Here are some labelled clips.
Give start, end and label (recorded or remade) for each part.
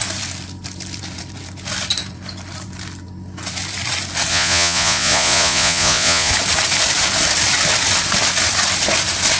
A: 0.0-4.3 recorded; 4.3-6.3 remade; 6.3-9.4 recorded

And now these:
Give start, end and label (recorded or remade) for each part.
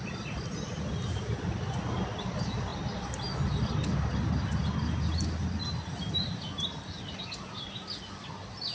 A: 0.0-8.7 recorded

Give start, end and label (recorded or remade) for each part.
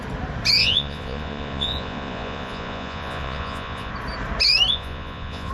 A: 0.0-0.6 recorded; 0.6-3.9 remade; 3.9-4.7 recorded; 4.7-5.5 remade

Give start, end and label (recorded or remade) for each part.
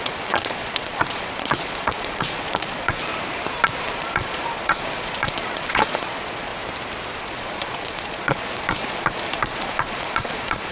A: 0.0-3.1 remade; 3.1-3.8 recorded; 3.8-6.5 remade; 6.5-7.2 recorded; 7.2-10.7 remade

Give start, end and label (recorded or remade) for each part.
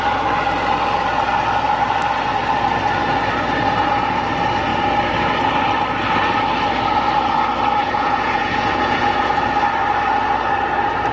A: 0.0-7.8 recorded; 7.8-9.4 remade; 9.4-11.1 recorded